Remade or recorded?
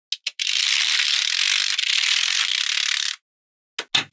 recorded